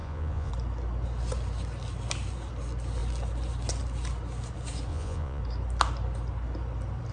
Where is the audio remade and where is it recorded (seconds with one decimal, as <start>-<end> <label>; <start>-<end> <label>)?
0.0-0.5 remade; 0.5-4.9 recorded; 4.9-5.4 remade; 5.4-7.1 recorded